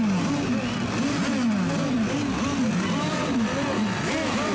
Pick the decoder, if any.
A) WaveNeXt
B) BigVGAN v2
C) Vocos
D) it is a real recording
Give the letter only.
D